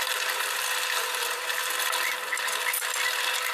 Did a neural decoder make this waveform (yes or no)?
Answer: no